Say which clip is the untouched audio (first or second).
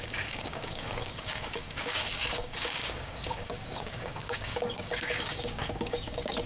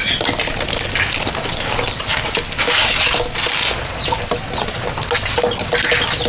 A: second